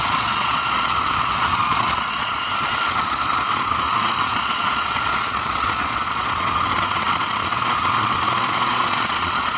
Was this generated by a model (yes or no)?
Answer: yes